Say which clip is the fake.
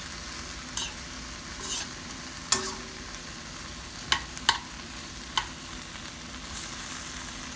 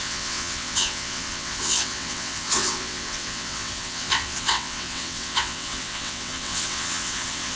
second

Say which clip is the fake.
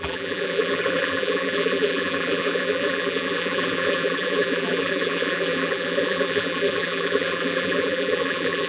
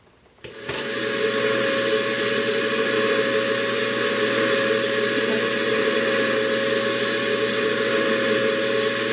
first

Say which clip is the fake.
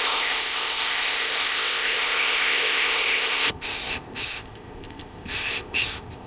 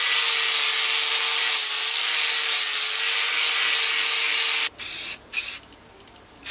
first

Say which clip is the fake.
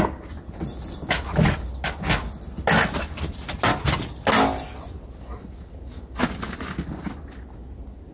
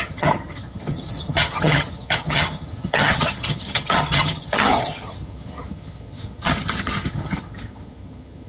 second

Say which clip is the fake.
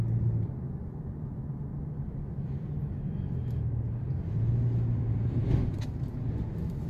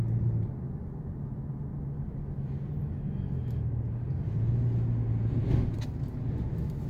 first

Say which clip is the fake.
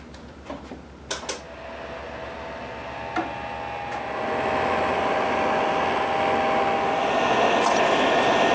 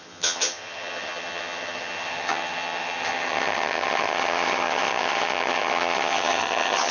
second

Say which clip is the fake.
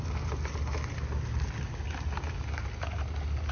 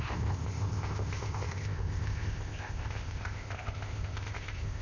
second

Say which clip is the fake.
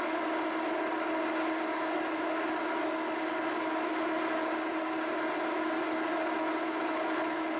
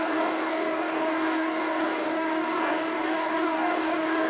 second